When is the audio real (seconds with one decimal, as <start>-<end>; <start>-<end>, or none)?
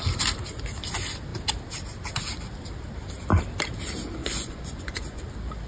0.0-4.2; 5.2-5.7